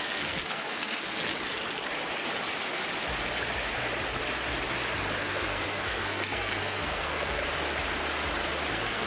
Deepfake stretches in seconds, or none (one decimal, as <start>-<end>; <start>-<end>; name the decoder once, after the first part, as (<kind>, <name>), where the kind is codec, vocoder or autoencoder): 0.0-1.3 (codec, SNAC); 5.2-7.4; 8.7-9.1